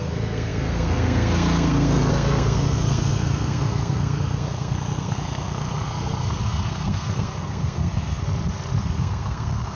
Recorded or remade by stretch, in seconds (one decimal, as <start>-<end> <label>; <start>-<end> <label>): 0.0-8.2 remade; 8.2-8.8 recorded; 8.8-9.8 remade